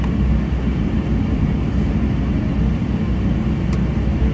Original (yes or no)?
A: yes